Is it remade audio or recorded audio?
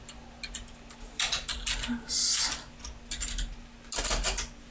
recorded